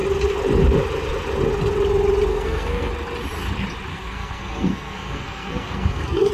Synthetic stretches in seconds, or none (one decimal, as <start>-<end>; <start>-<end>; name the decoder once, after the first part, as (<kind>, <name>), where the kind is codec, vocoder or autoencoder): 2.3-2.9 (codec, SNAC); 3.9-6.3